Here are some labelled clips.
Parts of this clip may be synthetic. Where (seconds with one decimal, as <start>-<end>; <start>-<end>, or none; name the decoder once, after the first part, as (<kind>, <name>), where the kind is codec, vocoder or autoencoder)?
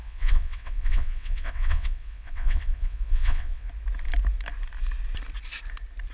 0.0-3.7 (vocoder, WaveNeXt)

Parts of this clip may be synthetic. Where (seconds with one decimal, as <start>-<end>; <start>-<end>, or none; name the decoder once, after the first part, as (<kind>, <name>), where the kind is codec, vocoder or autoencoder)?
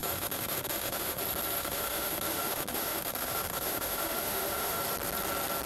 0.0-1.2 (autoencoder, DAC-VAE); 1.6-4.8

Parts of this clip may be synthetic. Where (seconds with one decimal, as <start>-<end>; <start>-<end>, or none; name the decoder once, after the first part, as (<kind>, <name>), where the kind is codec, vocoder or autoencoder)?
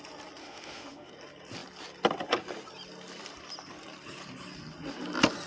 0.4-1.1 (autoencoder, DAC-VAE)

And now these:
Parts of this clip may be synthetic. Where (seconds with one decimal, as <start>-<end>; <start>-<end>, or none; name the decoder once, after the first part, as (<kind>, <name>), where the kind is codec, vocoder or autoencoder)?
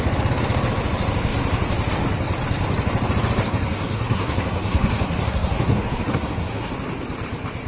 3.4-6.7 (codec, SNAC)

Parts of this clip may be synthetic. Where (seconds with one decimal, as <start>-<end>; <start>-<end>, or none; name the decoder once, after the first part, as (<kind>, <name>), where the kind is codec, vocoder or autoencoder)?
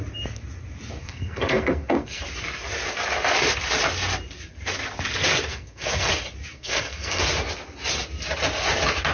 1.0-2.2 (codec, SNAC); 5.5-6.1; 6.5-7.2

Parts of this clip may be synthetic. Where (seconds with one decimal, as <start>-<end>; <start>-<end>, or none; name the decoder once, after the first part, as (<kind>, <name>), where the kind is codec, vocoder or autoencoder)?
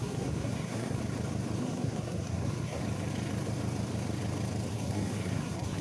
0.0-1.0 (codec, SNAC); 1.6-2.8; 4.7-5.8